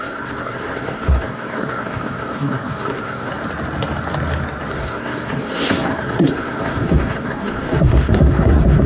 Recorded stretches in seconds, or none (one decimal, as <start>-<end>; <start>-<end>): 3.3-4.7